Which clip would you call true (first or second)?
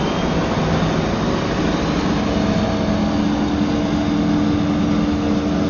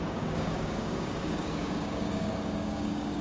first